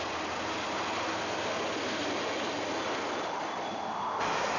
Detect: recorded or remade recorded